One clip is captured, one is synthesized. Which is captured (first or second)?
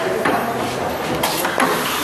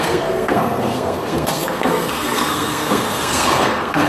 first